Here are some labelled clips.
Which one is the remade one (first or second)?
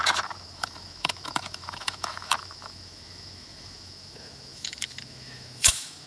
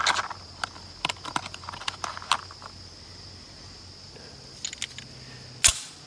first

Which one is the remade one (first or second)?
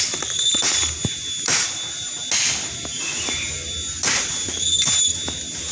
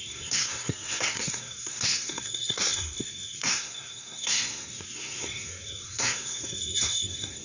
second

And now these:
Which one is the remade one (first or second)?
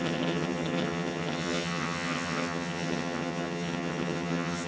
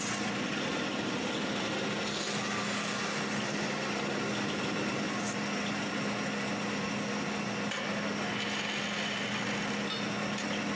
first